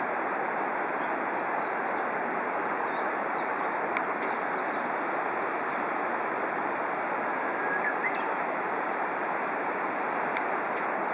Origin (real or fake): fake